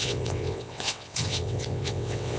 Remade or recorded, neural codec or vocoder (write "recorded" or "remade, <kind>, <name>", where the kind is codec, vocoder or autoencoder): remade, vocoder, WaveNeXt